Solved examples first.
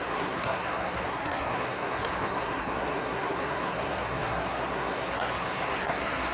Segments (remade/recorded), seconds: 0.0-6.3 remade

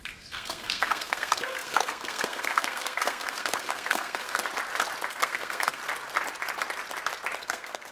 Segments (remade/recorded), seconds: 0.0-4.4 remade; 4.4-5.1 recorded; 5.1-5.8 remade; 5.8-7.4 recorded; 7.4-7.9 remade